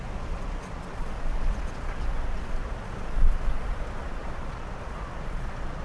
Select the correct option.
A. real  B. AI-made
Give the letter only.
B